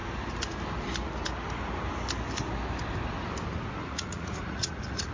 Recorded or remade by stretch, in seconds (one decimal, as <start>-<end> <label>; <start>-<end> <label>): 0.0-3.8 recorded; 3.8-5.1 remade